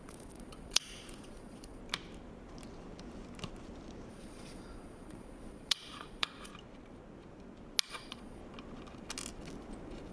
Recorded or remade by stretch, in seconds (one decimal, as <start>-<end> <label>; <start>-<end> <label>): 0.0-1.8 remade; 1.8-4.1 recorded; 4.1-6.5 remade; 6.5-7.9 recorded; 7.9-8.4 remade; 8.4-10.1 recorded